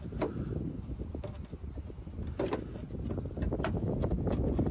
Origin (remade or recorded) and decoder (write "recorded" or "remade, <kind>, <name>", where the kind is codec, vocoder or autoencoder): recorded